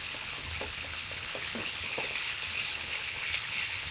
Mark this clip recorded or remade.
remade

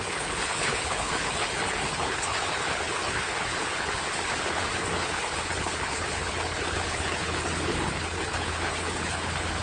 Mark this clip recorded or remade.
remade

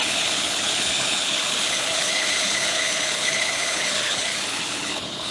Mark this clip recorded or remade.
remade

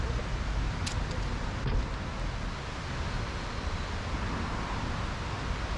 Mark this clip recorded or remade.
recorded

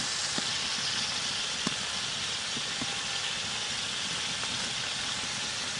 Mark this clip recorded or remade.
recorded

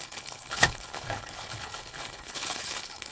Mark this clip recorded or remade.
remade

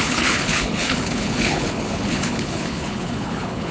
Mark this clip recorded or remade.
remade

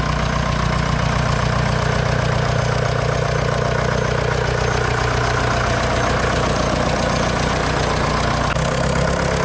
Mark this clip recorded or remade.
recorded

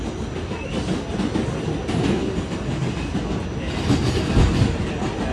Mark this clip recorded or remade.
recorded